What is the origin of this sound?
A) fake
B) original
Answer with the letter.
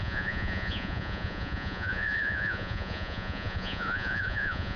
A